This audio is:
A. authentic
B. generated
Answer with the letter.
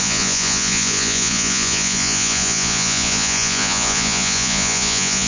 B